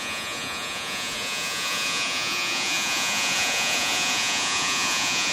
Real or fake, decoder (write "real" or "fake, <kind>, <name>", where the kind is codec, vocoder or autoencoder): fake, vocoder, Vocos